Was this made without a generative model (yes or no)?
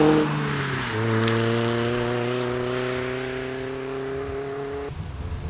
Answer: yes